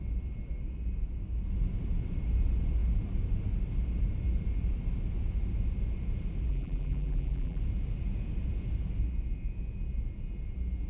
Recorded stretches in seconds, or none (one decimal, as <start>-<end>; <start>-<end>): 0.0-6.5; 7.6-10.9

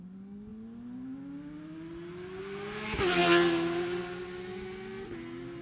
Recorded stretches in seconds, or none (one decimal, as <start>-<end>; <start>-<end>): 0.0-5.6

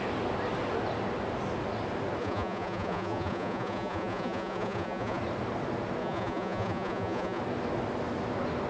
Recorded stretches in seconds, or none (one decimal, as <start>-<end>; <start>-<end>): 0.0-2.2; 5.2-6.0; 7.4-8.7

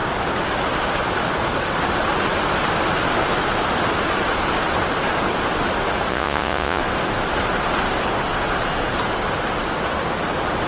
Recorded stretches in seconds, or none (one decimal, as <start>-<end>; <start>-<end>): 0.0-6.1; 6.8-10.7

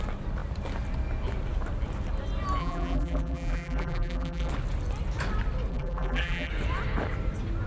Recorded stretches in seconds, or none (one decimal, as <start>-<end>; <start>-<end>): 0.0-2.6; 4.5-5.7; 6.5-7.7

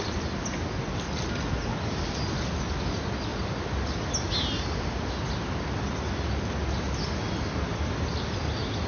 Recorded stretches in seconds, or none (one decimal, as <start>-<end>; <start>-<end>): 0.0-8.9

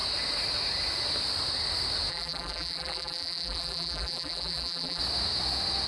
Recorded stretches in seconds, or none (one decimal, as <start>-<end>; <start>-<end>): 0.0-2.1; 5.0-5.9